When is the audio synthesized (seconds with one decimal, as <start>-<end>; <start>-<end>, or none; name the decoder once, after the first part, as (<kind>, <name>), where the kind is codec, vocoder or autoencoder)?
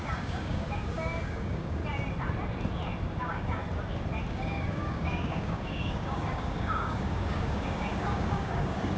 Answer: 0.0-1.8 (codec, DAC); 3.2-3.6; 4.3-9.0